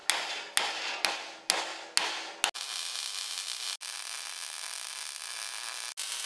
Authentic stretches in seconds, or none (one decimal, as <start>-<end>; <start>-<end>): 0.0-6.3